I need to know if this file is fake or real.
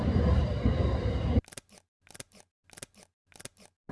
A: real